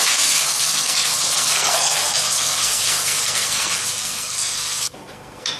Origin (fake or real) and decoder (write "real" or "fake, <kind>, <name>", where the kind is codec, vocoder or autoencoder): fake, codec, SNAC